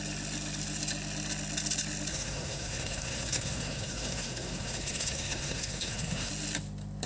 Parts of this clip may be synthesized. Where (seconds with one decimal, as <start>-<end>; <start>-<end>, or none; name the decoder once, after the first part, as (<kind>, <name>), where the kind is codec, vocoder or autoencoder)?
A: 2.1-6.3 (codec, SNAC)